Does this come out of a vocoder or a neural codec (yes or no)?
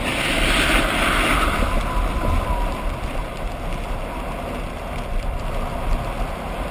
no